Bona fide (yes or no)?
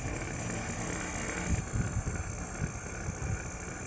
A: yes